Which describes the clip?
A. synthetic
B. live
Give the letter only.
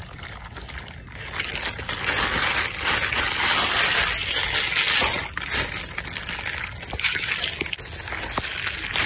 B